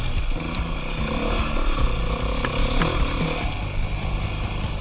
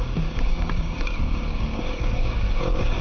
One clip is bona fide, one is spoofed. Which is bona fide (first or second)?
first